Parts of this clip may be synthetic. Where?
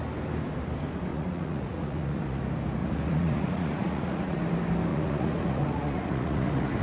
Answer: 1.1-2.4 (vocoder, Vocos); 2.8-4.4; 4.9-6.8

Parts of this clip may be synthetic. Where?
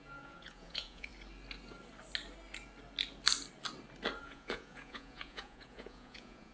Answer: 0.0-1.1 (vocoder, Vocos); 4.2-6.5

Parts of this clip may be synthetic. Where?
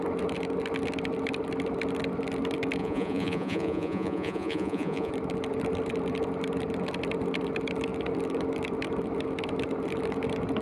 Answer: 2.8-5.1 (vocoder, Vocos)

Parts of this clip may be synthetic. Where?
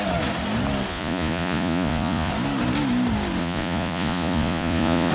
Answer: 0.9-2.3 (vocoder, Vocos); 3.4-5.1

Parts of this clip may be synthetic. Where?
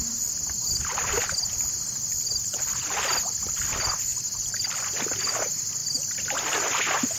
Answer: none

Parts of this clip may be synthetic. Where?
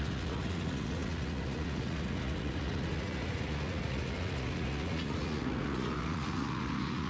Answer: 0.0-7.1 (vocoder, Vocos)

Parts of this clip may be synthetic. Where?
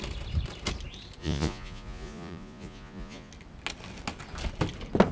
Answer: 1.2-3.3 (vocoder, Vocos)